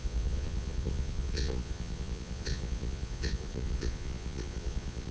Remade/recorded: remade